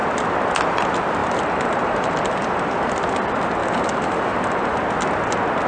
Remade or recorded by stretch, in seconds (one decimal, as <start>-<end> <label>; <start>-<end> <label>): 0.0-1.2 recorded; 1.2-2.7 remade; 2.7-3.6 recorded; 3.6-4.8 remade; 4.8-5.7 recorded